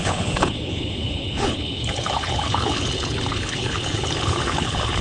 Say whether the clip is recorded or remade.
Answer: remade